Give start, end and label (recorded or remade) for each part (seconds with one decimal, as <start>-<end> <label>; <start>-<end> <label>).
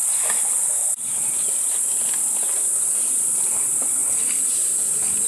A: 0.0-1.7 remade; 1.7-5.3 recorded